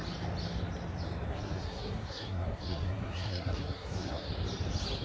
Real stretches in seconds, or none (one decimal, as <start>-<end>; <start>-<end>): 0.0-1.3; 4.3-5.0